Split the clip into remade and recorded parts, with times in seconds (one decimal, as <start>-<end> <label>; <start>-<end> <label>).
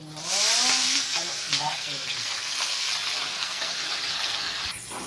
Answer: 0.0-0.8 recorded; 0.8-2.9 remade; 2.9-3.3 recorded; 3.3-4.6 remade; 4.6-5.1 recorded